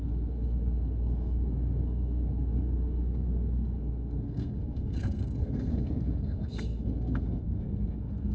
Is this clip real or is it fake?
fake